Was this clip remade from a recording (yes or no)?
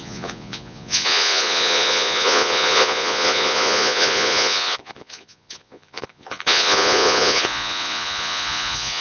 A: yes